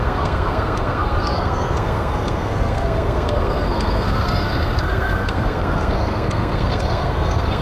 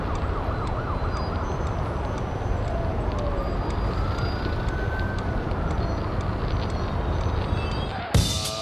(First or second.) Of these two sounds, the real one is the second